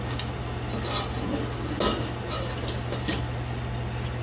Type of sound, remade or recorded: recorded